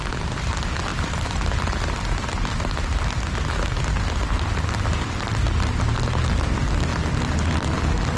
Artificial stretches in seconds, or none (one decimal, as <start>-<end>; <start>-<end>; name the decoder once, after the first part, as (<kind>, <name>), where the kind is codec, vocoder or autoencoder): none